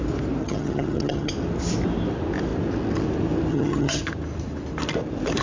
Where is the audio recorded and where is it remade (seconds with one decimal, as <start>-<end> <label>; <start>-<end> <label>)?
0.0-0.4 recorded; 0.4-1.3 remade; 1.3-3.5 recorded; 3.5-4.0 remade; 4.0-5.4 recorded

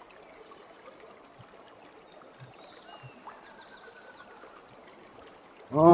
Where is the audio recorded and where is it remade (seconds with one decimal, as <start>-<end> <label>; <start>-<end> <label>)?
0.0-5.9 recorded